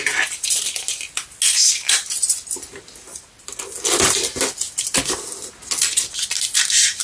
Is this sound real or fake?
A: real